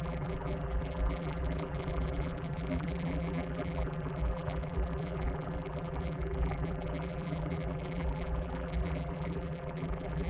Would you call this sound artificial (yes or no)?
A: yes